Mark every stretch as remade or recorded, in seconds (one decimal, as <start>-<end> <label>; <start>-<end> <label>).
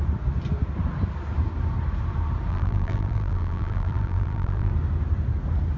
0.0-2.5 recorded; 2.5-4.7 remade; 4.7-5.8 recorded